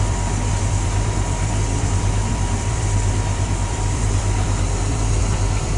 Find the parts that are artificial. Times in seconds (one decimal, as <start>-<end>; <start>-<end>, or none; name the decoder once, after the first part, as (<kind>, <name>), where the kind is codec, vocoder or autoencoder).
0.0-5.8 (vocoder, BigVGAN v2)